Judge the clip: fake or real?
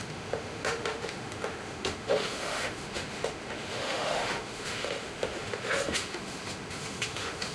fake